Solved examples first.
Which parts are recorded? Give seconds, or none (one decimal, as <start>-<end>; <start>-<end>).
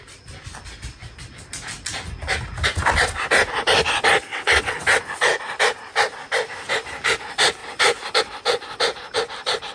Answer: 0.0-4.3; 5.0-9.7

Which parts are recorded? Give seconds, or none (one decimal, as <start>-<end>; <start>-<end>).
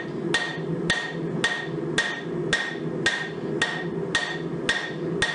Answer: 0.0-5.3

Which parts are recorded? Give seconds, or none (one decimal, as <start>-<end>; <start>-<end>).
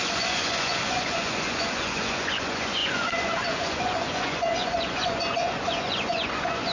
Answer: none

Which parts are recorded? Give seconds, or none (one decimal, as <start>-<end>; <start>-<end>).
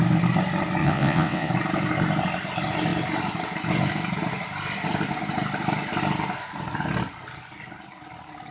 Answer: 0.0-0.8; 1.5-8.5